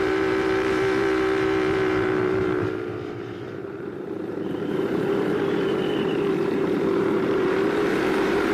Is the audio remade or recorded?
remade